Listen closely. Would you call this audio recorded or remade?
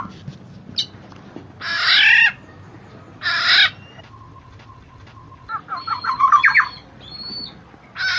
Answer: recorded